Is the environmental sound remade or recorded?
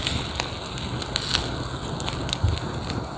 recorded